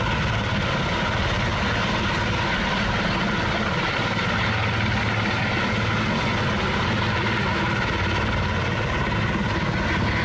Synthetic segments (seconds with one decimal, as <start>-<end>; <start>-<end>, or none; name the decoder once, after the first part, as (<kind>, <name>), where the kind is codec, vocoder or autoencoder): none